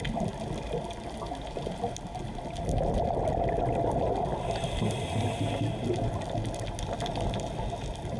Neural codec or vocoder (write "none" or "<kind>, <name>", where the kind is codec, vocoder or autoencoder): none